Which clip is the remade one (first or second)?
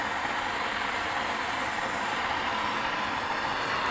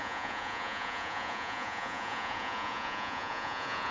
second